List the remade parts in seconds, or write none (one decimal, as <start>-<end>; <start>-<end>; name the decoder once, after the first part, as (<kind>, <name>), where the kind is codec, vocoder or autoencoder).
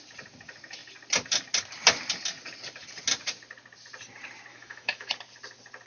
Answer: 4.5-5.1 (autoencoder, DAC-VAE)